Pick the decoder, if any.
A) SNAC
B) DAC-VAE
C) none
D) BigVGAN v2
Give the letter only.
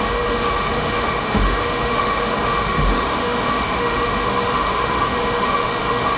B